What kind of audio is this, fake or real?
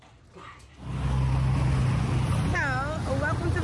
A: real